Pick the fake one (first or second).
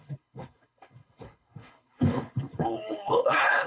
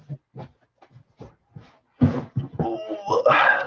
first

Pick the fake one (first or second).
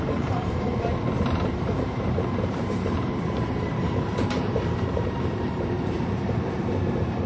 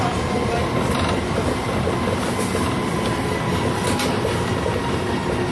first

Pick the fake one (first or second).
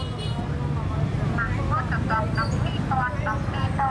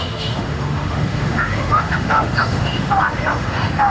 second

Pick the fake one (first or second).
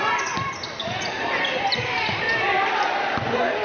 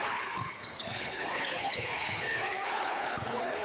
second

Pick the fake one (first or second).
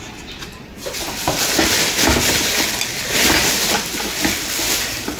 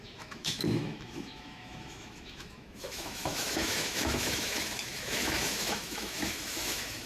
second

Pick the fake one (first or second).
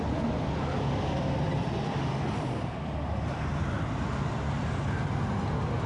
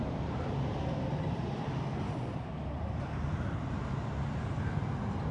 second